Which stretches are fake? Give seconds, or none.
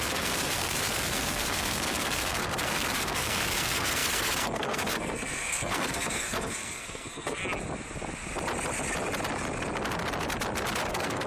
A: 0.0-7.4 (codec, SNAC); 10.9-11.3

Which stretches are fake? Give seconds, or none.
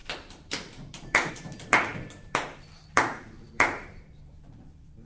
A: 0.0-5.1 (vocoder, BigVGAN v2)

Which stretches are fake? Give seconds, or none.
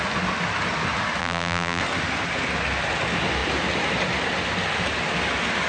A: 1.2-1.8 (vocoder, BigVGAN v2)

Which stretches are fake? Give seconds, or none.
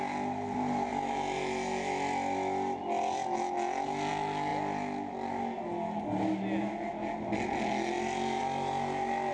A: none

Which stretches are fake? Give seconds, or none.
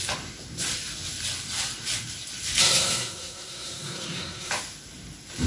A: 2.6-4.5 (codec, SNAC)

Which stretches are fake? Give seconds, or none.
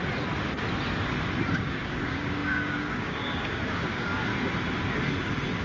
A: 1.5-4.3 (codec, DAC)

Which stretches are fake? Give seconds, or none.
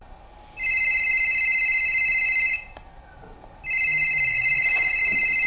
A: 4.3-5.0 (vocoder, Vocos)